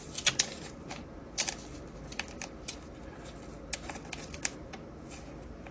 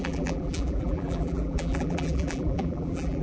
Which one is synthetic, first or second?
second